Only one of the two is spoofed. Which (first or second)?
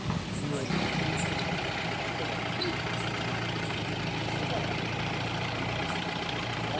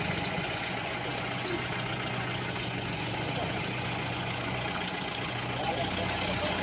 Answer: second